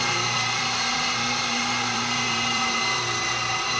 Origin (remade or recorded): remade